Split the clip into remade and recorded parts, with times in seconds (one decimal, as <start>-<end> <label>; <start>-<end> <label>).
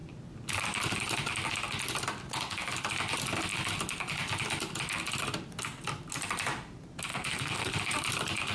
0.0-7.1 recorded; 7.1-7.7 remade; 7.7-8.5 recorded